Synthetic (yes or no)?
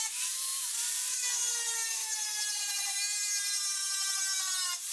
yes